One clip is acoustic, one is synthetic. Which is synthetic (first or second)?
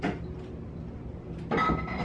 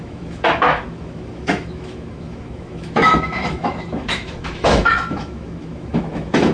second